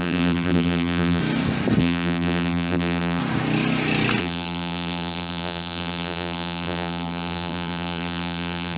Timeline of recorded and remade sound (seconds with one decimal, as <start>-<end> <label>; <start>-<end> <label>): 0.0-1.2 remade; 1.2-1.8 recorded; 1.8-3.2 remade; 3.2-4.2 recorded; 4.2-8.8 remade